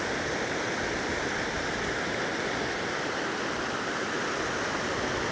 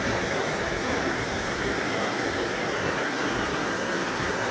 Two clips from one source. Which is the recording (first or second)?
first